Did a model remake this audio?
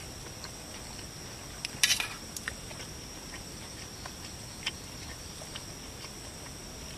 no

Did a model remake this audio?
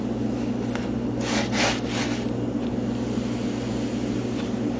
no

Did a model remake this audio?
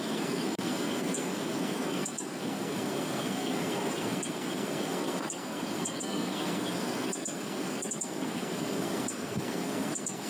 yes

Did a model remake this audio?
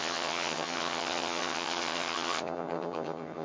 yes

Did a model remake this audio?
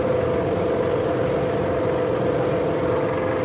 no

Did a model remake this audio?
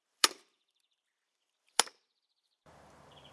yes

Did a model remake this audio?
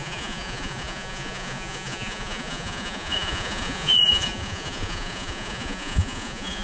yes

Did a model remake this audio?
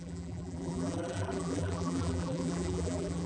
yes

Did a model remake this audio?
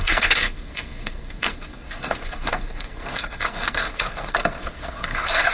yes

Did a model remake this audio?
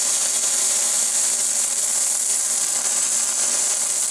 yes